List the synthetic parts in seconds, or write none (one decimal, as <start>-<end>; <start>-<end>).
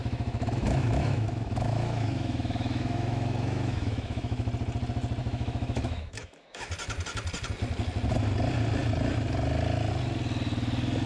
0.0-4.5; 5.2-6.7